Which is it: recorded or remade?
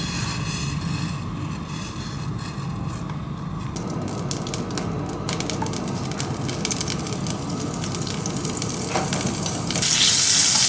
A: recorded